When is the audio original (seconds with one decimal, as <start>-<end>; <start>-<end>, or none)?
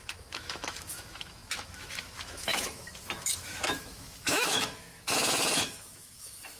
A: none